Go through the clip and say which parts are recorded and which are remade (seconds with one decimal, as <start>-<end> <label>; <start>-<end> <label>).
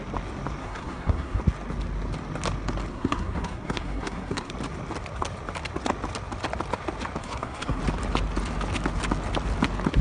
0.0-0.6 recorded; 0.6-1.4 remade; 1.4-2.9 recorded; 2.9-4.5 remade; 4.5-7.2 recorded; 7.2-7.8 remade; 7.8-10.0 recorded